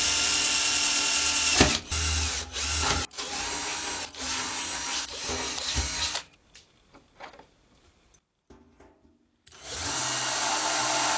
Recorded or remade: recorded